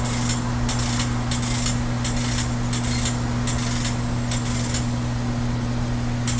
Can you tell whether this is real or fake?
real